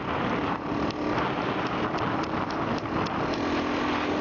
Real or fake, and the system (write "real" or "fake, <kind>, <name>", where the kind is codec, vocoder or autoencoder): real